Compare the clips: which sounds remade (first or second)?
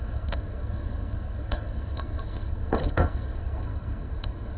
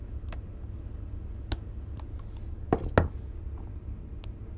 first